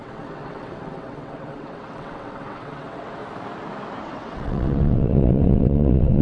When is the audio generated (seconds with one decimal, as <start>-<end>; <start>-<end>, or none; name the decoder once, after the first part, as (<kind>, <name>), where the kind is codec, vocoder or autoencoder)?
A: 0.0-3.2 (vocoder, WaveNeXt); 4.0-6.2